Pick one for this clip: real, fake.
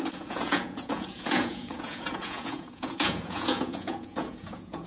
fake